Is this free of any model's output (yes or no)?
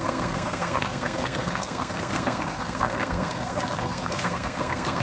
no